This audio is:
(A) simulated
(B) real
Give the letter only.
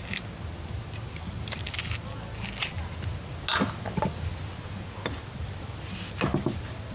B